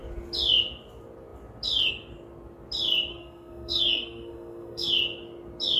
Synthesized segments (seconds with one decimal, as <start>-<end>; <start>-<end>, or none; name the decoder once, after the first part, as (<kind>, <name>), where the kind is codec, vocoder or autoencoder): 3.1-4.9 (codec, SNAC)